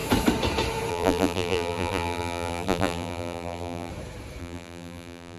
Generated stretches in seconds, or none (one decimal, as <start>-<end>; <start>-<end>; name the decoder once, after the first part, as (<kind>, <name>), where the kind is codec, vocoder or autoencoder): 0.9-3.9 (vocoder, BigVGAN v2); 4.4-5.4